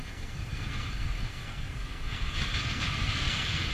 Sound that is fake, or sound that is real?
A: fake